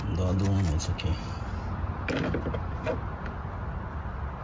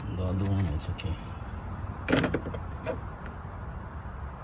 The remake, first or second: second